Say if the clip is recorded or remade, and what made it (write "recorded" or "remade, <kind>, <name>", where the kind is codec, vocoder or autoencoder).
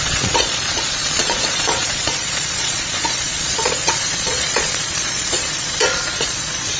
remade, vocoder, Vocos